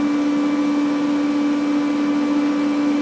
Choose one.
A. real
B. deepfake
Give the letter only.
A